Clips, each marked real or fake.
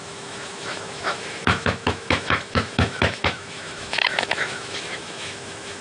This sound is fake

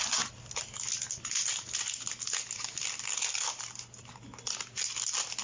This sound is real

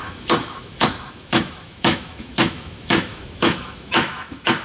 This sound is fake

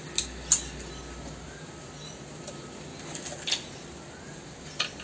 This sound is real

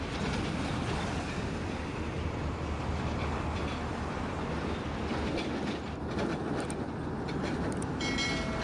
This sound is real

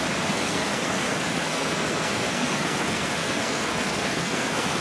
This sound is fake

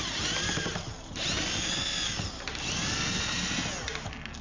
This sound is real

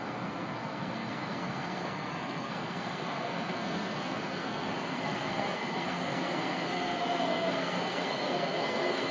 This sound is fake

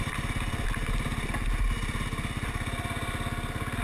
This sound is real